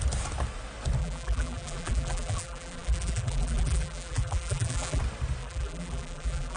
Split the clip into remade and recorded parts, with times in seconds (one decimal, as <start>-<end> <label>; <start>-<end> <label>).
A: 0.0-1.0 recorded; 1.0-5.0 remade; 5.0-5.4 recorded; 5.4-6.6 remade